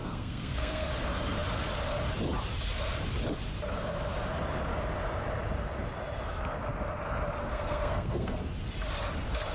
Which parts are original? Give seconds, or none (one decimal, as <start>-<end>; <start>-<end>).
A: 0.9-7.4; 8.4-9.5